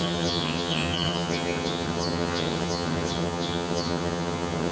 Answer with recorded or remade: remade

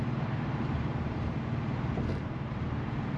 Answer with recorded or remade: remade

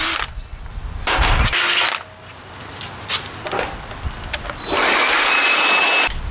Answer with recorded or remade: recorded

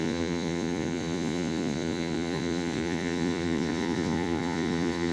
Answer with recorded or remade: remade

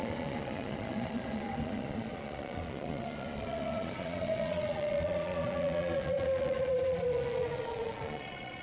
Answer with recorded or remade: remade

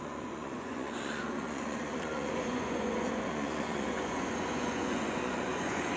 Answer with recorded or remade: remade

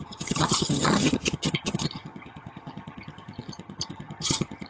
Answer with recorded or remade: remade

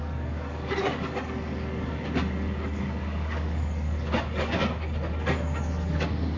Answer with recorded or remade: remade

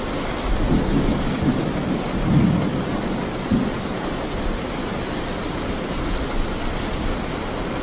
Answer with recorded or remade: recorded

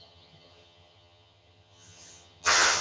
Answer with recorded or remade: remade